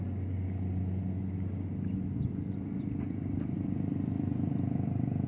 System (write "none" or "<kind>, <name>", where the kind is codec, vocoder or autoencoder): none